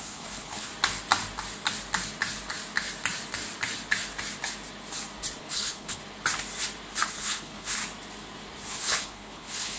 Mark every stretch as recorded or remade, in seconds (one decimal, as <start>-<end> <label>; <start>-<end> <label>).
0.0-0.7 remade; 0.7-5.4 recorded; 5.4-6.0 remade; 6.0-7.1 recorded; 7.1-7.8 remade; 7.8-8.7 recorded; 8.7-9.8 remade